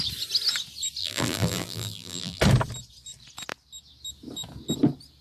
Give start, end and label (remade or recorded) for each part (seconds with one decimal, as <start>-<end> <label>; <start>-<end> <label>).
0.0-1.0 recorded; 1.0-2.4 remade; 2.4-5.2 recorded